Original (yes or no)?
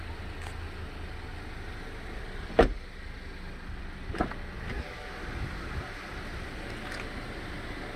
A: yes